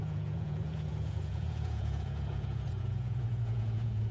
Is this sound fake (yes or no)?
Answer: yes